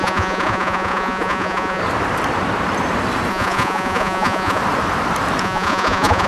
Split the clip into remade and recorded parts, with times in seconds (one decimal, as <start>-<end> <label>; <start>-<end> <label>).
0.0-1.8 remade; 1.8-3.3 recorded; 3.3-4.6 remade; 4.6-5.4 recorded; 5.4-6.3 remade